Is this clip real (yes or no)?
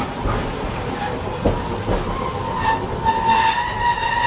yes